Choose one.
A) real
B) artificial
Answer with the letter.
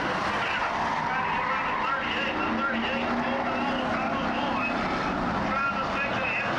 A